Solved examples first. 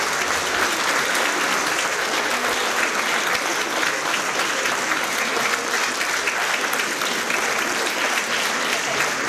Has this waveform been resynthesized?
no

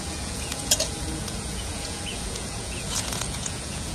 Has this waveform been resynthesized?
yes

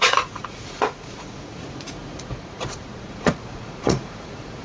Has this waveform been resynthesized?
yes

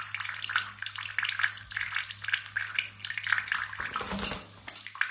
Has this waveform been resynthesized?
no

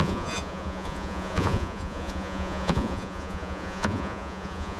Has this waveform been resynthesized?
yes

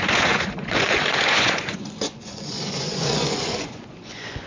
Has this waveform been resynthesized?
yes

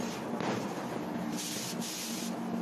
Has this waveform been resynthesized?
no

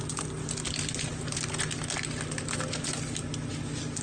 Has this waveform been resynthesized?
no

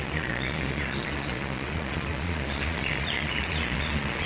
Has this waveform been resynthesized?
yes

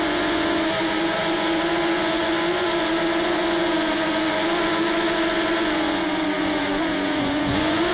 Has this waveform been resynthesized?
yes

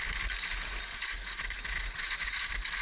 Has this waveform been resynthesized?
no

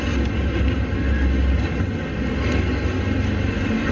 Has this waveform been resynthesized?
no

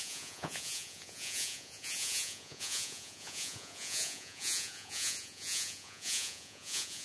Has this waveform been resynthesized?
yes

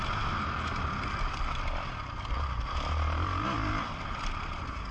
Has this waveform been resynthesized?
no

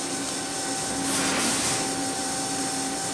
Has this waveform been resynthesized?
no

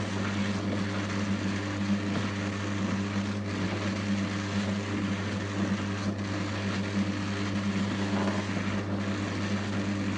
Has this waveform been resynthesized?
no